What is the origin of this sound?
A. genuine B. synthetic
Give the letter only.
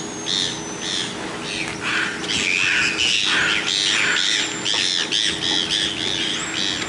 A